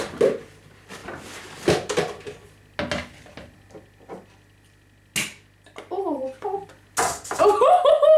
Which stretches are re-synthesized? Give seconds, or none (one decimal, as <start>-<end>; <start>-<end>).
none